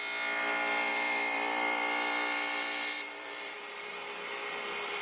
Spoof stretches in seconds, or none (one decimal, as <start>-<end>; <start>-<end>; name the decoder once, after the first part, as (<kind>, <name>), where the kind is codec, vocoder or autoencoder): 0.9-3.9 (vocoder, BigVGAN v2)